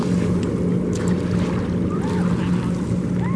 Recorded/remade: recorded